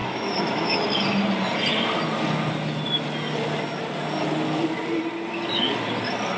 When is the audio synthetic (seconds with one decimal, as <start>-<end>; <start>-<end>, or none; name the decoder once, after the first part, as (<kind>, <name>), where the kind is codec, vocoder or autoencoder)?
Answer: 0.0-0.8 (autoencoder, DAC-VAE)